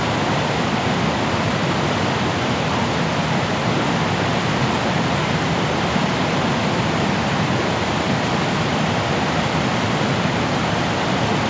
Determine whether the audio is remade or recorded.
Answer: recorded